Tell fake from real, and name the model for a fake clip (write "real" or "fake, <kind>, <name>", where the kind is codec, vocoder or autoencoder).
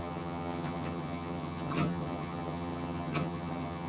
fake, vocoder, HiFi-GAN